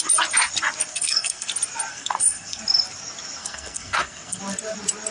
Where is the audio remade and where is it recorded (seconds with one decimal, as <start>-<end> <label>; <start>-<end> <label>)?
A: 0.0-0.9 recorded; 0.9-1.5 remade; 1.5-1.9 recorded; 1.9-2.6 remade; 2.6-3.4 recorded; 3.4-4.4 remade; 4.4-5.1 recorded

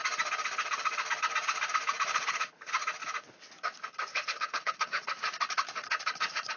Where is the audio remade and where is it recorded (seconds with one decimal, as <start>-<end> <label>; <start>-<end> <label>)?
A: 0.0-2.1 recorded; 2.1-2.7 remade; 2.7-4.1 recorded; 4.1-5.1 remade; 5.1-6.6 recorded

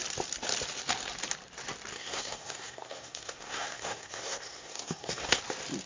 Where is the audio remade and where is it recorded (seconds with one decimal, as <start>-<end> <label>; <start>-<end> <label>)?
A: 0.0-1.9 recorded; 1.9-5.4 remade; 5.4-5.9 recorded